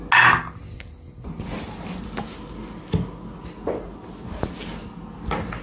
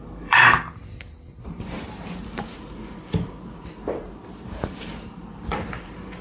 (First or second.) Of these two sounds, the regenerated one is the second